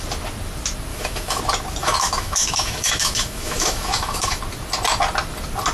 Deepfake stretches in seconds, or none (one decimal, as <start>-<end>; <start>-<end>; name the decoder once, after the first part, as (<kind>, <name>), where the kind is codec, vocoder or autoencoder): 0.9-1.4 (autoencoder, DAC-VAE); 1.8-4.4